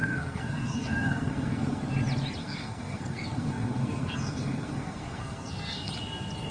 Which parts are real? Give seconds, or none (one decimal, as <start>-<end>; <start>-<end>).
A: 1.8-2.4; 5.9-6.5